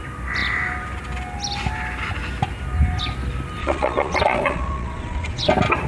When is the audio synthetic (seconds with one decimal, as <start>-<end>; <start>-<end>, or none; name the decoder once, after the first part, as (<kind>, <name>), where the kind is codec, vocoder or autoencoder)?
3.6-5.5 (vocoder, Vocos)